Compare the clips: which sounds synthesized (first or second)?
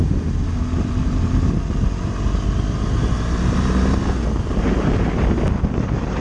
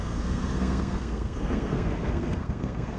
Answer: second